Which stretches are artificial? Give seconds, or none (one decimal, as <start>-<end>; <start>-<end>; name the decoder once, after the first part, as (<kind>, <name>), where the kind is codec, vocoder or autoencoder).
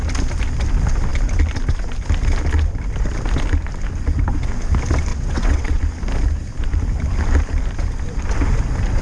5.1-5.8 (vocoder, WaveNeXt)